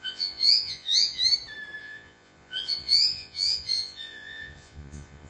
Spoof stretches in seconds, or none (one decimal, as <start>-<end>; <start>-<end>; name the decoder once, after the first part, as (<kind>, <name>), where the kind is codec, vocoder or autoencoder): 0.0-1.2 (vocoder, Vocos); 1.8-5.3